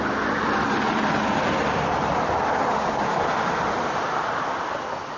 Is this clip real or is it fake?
real